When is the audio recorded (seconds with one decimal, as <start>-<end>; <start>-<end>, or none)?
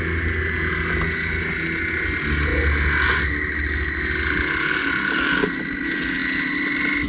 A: 0.0-7.1